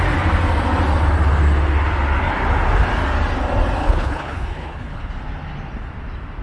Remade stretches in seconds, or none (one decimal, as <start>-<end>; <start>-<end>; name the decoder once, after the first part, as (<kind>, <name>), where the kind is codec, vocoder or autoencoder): 3.8-5.1 (codec, HILCodec)